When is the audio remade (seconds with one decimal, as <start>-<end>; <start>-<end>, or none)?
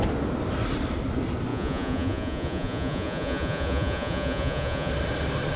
1.5-4.9